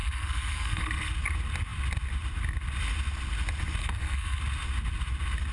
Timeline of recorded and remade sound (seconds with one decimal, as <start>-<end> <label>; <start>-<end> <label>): 0.0-1.1 remade; 1.1-3.8 recorded; 3.8-4.4 remade; 4.4-5.5 recorded